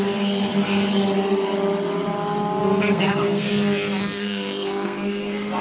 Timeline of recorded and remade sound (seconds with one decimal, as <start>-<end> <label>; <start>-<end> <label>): 0.0-2.6 recorded; 2.6-3.5 remade; 3.5-4.0 recorded; 4.0-5.6 remade